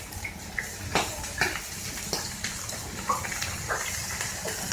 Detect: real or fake real